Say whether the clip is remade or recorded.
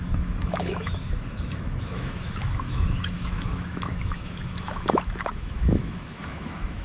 remade